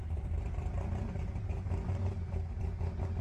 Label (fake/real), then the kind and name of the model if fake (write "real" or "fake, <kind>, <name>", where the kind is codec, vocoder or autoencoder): real